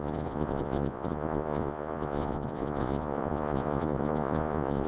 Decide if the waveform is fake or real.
fake